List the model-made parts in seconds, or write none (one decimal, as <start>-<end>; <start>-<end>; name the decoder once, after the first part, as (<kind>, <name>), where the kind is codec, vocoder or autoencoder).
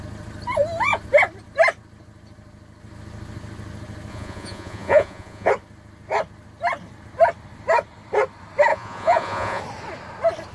4.1-5.5 (vocoder, Vocos); 8.7-9.6